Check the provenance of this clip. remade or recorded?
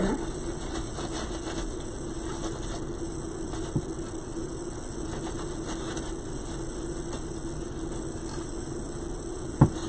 recorded